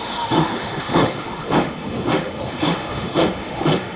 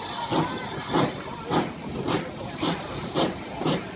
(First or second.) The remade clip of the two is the first